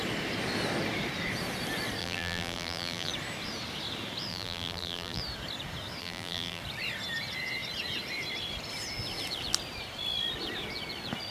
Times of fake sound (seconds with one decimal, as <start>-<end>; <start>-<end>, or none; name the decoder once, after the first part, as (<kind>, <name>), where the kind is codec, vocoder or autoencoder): 2.0-3.1 (vocoder, BigVGAN v2); 4.3-5.2; 6.0-6.6